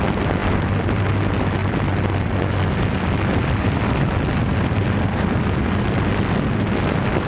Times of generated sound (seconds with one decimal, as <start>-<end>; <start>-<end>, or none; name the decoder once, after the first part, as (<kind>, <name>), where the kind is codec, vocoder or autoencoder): 0.4-1.1 (vocoder, BigVGAN v2); 1.6-5.4